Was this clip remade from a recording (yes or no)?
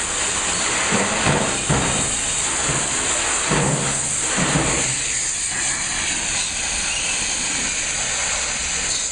no